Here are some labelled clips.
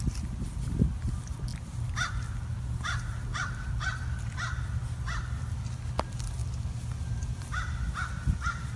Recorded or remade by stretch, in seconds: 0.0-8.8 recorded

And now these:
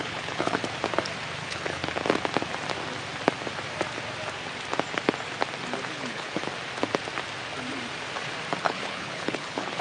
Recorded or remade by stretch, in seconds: 0.0-0.6 remade; 0.6-1.4 recorded; 1.4-1.8 remade; 1.8-5.9 recorded; 5.9-6.4 remade; 6.4-8.6 recorded; 8.6-9.8 remade

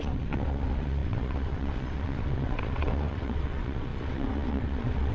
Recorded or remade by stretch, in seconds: 0.0-5.1 remade

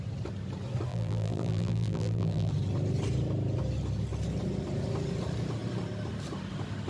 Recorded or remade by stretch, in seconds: 0.0-0.9 recorded; 0.9-2.5 remade; 2.5-6.9 recorded